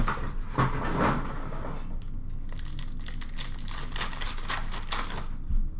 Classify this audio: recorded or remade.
recorded